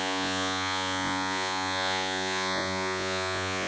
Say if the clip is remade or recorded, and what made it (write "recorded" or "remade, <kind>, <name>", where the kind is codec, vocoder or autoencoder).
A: remade, vocoder, Vocos